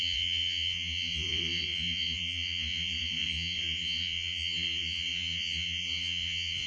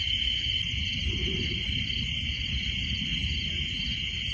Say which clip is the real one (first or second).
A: second